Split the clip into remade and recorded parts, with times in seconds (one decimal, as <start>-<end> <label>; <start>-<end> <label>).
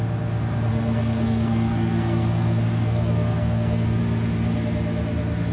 0.0-0.7 recorded; 0.7-4.0 remade; 4.0-5.5 recorded